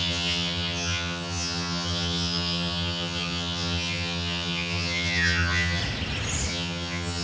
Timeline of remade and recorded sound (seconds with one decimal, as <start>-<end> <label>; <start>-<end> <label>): 0.0-5.8 remade; 5.8-6.5 recorded; 6.5-7.2 remade